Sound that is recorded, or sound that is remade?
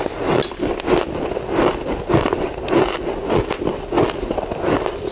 recorded